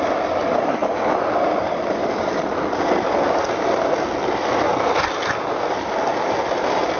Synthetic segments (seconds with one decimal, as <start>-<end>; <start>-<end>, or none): none